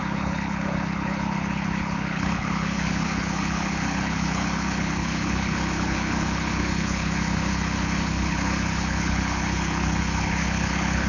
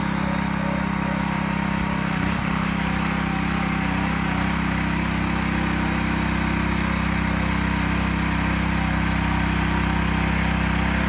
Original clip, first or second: second